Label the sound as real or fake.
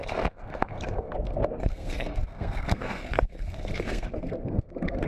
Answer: fake